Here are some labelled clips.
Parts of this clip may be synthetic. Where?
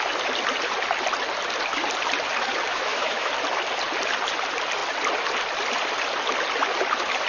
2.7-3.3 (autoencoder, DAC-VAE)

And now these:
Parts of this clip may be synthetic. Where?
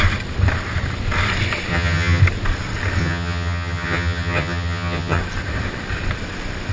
1.7-2.2 (vocoder, HiFi-GAN); 3.0-5.2